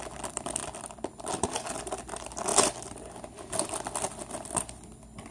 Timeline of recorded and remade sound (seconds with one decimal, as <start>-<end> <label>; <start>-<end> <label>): 0.0-2.5 remade; 2.5-3.5 recorded; 3.5-5.3 remade